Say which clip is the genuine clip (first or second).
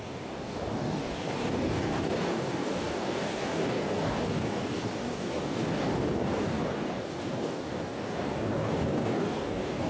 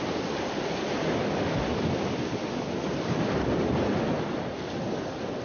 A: second